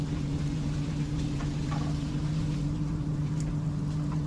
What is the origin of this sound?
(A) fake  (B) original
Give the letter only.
A